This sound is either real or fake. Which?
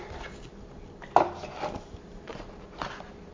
real